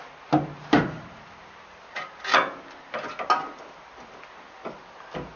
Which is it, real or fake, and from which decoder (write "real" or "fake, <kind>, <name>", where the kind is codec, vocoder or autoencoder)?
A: real